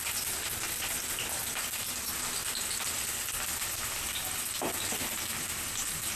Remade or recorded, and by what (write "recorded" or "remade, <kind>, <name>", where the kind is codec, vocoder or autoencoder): recorded